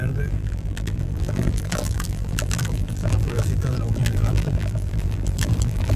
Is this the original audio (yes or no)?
no